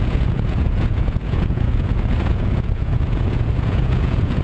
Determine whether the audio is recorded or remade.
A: remade